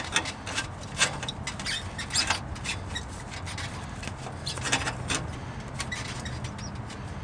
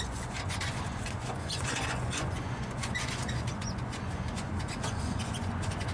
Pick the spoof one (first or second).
second